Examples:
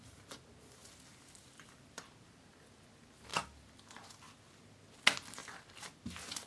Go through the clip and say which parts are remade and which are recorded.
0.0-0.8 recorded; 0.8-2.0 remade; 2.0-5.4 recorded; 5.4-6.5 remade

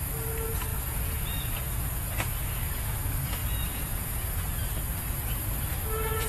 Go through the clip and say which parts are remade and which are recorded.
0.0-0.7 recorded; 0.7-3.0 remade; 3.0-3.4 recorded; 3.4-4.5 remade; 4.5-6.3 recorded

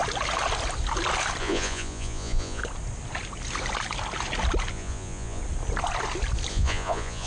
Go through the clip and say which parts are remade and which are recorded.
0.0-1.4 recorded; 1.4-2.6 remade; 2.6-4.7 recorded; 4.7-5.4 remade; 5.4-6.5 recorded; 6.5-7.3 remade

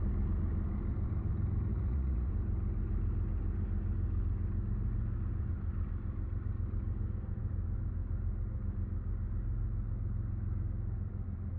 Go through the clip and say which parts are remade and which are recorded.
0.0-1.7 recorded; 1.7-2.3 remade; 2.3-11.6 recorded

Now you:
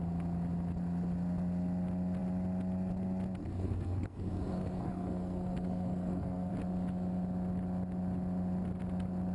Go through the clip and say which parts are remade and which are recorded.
0.0-3.4 recorded; 3.4-6.5 remade; 6.5-9.3 recorded